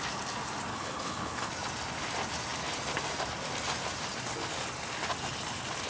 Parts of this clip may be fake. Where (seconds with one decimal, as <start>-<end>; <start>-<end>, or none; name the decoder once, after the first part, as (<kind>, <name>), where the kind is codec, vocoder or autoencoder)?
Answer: 0.7-1.5 (codec, HILCodec)